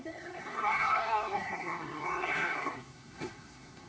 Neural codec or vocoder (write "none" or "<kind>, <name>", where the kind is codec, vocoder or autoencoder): codec, SNAC